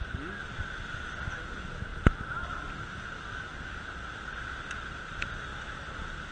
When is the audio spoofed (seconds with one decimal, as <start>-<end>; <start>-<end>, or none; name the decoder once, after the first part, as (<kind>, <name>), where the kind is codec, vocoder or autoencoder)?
none

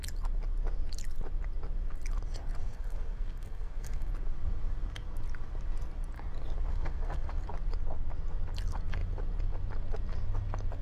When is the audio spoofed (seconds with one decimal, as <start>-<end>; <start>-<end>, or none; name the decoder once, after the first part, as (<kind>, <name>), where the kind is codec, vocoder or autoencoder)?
2.6-4.1 (codec, SNAC); 6.7-7.4

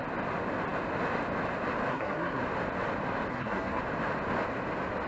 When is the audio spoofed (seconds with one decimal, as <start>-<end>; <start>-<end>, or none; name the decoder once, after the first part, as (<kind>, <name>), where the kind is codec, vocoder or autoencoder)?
1.9-2.4 (codec, SNAC); 3.3-3.8

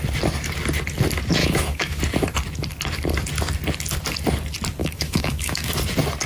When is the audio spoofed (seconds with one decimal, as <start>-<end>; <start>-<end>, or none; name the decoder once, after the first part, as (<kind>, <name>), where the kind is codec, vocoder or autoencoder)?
1.4-2.0 (autoencoder, DAC-VAE); 4.8-5.7

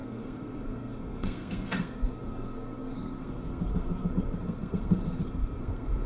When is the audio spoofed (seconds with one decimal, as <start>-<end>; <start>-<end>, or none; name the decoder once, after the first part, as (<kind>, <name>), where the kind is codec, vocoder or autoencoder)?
0.0-6.1 (codec, SNAC)